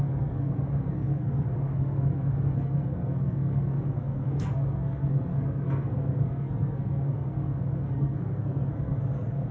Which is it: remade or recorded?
remade